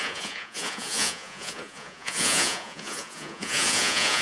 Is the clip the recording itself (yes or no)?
no